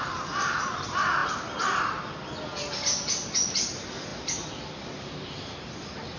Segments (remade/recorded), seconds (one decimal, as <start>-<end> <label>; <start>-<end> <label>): 0.0-6.2 recorded

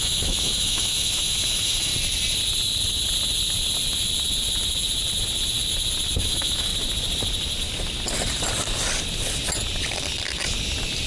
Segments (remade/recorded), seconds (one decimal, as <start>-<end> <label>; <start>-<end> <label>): 0.0-1.9 remade; 1.9-6.2 recorded; 6.2-6.7 remade; 6.7-11.1 recorded

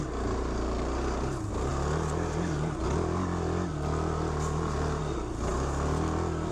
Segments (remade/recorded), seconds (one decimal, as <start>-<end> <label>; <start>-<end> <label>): 0.0-6.5 recorded

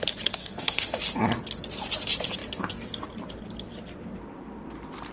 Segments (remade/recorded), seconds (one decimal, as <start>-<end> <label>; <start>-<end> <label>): 0.0-0.4 recorded; 0.4-1.0 remade; 1.0-5.1 recorded

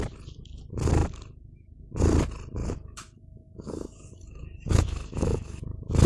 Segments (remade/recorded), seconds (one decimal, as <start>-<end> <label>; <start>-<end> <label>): 0.0-2.6 recorded; 2.6-5.6 remade; 5.6-6.1 recorded

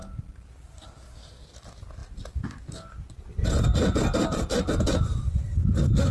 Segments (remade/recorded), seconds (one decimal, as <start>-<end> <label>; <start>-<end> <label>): 0.0-6.1 recorded